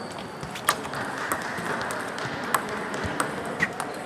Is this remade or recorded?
recorded